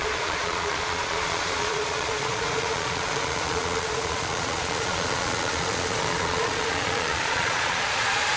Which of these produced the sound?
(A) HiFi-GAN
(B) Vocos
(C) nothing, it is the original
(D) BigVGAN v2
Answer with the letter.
B